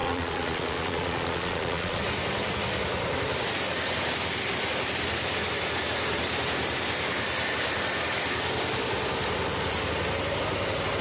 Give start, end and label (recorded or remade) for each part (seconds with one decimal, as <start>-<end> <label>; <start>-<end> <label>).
0.0-2.0 remade; 2.0-11.0 recorded